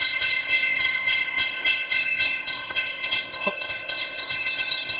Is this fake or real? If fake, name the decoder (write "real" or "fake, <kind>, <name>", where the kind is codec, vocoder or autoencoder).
fake, codec, ZipCodec